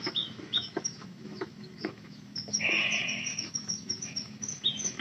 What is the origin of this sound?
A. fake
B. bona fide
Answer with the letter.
A